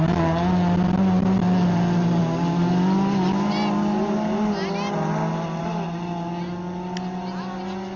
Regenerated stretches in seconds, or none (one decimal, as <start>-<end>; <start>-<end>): none